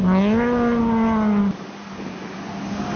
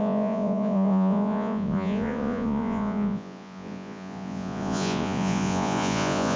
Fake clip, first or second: second